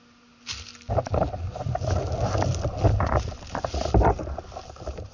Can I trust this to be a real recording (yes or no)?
yes